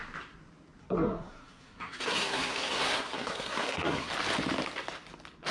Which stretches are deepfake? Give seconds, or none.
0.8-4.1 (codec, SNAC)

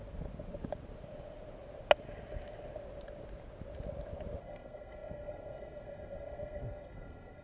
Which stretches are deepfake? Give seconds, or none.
4.4-7.4 (codec, SNAC)

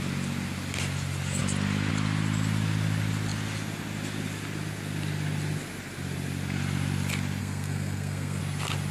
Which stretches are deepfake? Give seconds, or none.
7.4-8.4 (codec, SNAC)

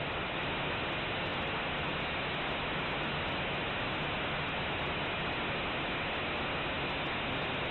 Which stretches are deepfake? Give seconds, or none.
none